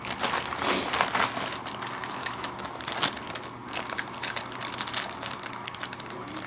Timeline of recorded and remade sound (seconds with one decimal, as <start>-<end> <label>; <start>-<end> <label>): 0.0-2.2 recorded; 2.2-2.8 remade; 2.8-6.5 recorded